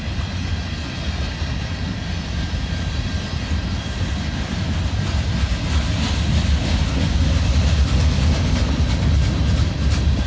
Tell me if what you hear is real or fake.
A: real